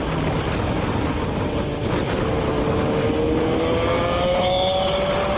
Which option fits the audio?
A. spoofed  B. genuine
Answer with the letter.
B